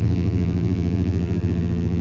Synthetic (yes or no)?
yes